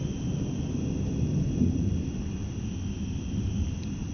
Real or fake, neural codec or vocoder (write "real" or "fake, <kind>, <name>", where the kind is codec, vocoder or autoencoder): real